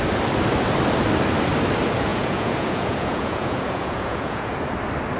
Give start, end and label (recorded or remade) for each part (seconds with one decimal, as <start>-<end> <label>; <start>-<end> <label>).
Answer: 0.0-2.1 recorded; 2.1-4.6 remade; 4.6-5.2 recorded

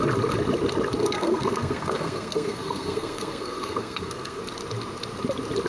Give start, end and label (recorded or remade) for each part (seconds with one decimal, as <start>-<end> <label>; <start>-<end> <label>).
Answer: 0.0-1.0 recorded; 1.0-4.4 remade; 4.4-5.7 recorded